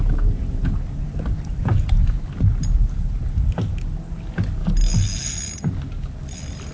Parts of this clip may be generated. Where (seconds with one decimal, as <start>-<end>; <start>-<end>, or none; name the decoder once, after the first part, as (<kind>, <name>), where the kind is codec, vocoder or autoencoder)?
none